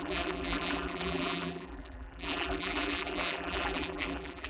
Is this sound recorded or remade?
remade